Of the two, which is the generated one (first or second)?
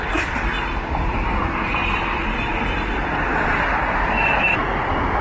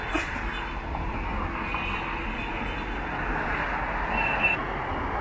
first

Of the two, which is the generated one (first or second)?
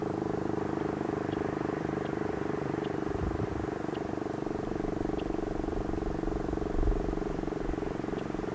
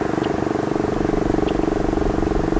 first